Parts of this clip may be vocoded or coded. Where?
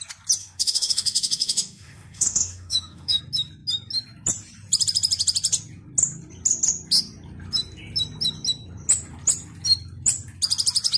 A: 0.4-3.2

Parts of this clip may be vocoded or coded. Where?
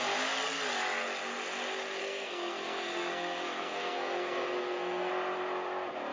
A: 2.0-5.1